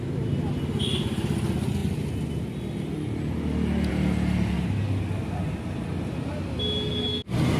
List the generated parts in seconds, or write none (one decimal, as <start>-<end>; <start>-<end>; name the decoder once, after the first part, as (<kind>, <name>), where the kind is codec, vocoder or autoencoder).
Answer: none